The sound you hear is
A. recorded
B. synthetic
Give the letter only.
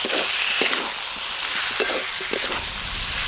A